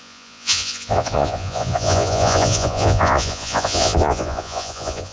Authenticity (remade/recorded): remade